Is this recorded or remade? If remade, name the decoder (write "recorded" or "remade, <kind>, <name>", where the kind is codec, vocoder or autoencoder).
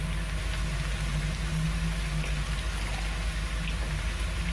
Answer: recorded